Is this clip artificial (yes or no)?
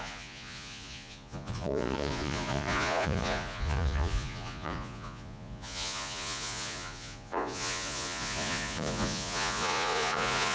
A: yes